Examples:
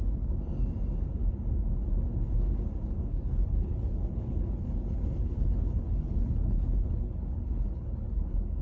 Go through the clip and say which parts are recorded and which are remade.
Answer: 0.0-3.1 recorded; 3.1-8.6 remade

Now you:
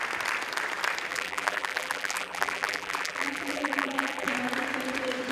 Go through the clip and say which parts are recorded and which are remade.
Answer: 0.0-1.1 recorded; 1.1-4.3 remade; 4.3-5.3 recorded

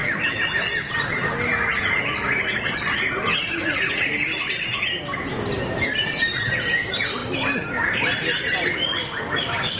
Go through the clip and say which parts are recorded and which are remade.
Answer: 0.0-9.8 recorded

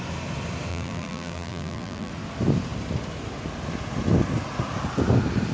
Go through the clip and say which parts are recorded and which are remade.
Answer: 0.0-0.7 recorded; 0.7-2.1 remade; 2.1-5.5 recorded

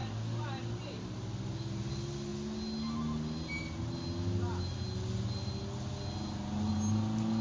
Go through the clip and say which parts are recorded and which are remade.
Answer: 0.0-7.4 recorded

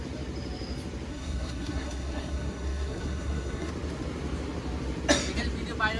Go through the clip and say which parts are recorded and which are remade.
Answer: 0.0-1.1 recorded; 1.1-3.7 remade; 3.7-6.0 recorded